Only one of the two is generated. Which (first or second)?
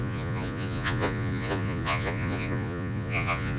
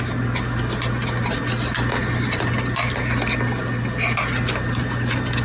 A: first